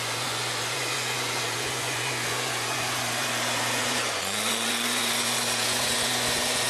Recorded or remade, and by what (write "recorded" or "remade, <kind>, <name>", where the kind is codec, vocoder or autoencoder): remade, vocoder, Vocos